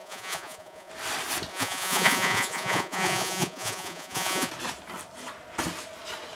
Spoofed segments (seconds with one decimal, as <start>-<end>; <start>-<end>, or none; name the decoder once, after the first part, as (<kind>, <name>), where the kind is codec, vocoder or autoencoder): 0.0-0.9 (vocoder, Vocos); 1.5-4.5